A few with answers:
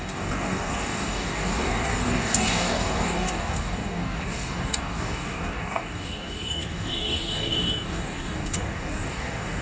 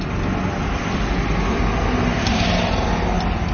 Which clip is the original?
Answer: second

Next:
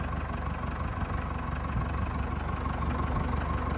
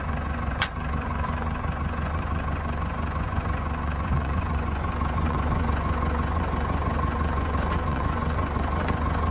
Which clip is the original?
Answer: first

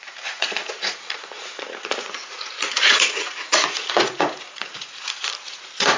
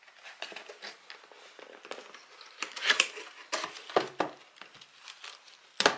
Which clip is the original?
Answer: second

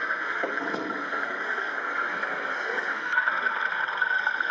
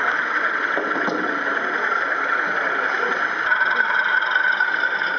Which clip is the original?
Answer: second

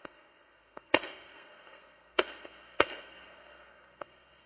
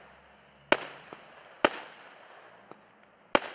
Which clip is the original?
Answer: second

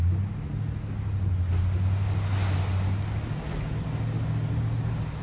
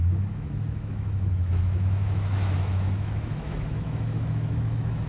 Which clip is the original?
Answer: first